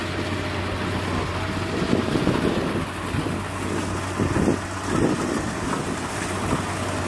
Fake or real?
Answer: real